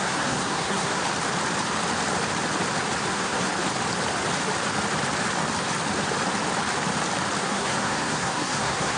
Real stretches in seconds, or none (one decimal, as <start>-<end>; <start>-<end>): 1.0-3.1; 3.5-7.4